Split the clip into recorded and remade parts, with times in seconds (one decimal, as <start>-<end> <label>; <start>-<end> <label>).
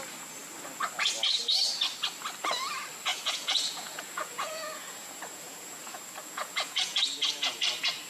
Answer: 0.0-3.1 recorded; 3.1-7.6 remade; 7.6-8.1 recorded